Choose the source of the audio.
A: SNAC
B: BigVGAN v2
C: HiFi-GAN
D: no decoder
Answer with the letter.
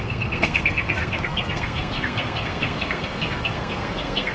A